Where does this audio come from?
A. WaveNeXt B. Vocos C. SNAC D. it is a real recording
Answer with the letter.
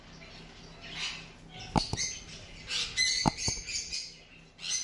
D